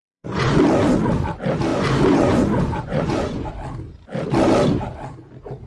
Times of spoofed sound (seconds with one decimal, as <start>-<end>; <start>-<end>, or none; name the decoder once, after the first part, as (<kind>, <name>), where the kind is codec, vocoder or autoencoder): 0.0-0.6 (vocoder, Vocos); 1.7-3.5